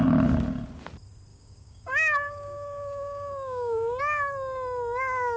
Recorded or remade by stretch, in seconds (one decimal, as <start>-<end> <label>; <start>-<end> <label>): 0.0-1.3 recorded; 1.3-4.0 remade; 4.0-5.4 recorded